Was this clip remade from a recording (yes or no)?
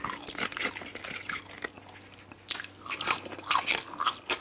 no